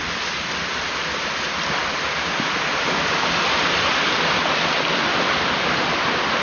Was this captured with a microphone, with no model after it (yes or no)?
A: yes